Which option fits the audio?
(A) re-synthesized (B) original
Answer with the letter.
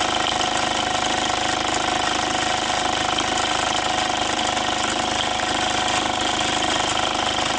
B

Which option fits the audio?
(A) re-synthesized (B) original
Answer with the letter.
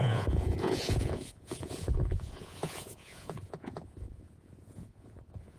A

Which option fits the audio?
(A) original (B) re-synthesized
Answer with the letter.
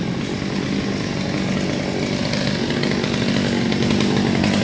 A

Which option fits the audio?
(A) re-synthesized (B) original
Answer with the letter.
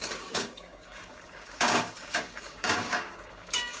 A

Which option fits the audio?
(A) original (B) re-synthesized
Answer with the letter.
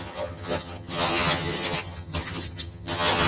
B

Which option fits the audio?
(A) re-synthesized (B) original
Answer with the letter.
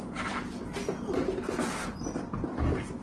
B